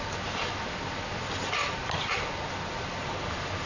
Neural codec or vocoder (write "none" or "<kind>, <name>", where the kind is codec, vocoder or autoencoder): none